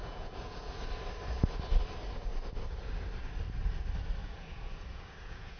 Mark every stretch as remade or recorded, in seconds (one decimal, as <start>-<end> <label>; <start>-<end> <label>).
0.0-0.7 remade; 0.7-4.2 recorded; 4.2-5.6 remade